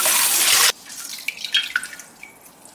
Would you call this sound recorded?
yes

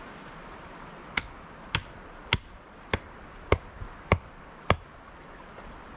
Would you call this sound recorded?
yes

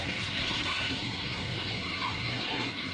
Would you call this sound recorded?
no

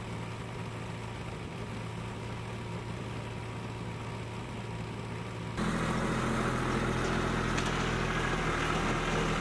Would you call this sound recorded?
yes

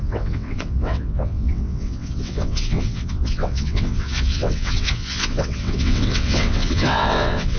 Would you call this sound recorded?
no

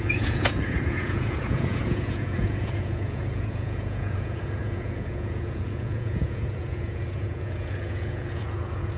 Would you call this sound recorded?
no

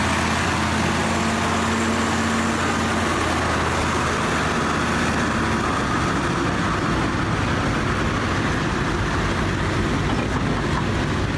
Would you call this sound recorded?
yes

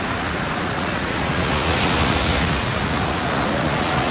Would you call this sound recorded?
no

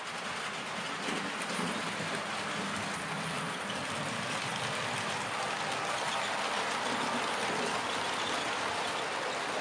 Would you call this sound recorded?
yes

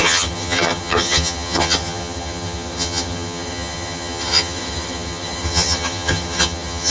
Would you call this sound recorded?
no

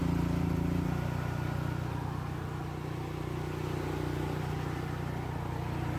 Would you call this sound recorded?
yes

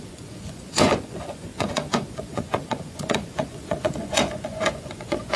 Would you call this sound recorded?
no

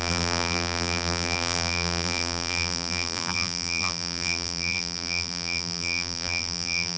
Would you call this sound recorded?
no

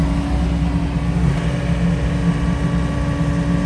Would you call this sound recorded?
yes